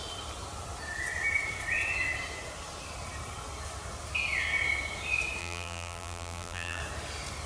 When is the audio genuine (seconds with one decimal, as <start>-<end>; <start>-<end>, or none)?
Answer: 0.0-5.4; 6.8-7.5